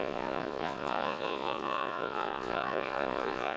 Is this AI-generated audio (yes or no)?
yes